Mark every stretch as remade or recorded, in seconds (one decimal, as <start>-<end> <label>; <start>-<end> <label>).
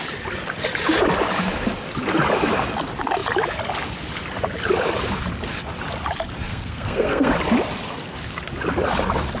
0.0-6.5 recorded; 6.5-7.3 remade; 7.3-9.4 recorded